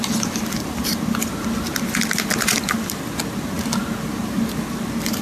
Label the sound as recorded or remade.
recorded